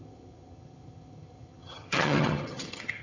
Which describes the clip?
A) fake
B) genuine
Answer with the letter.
A